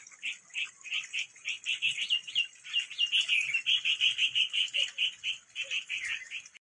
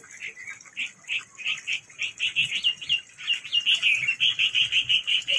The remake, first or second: first